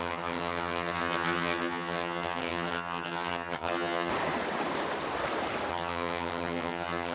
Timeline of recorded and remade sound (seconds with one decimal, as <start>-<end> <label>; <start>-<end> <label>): 0.0-4.1 remade; 4.1-5.7 recorded; 5.7-7.1 remade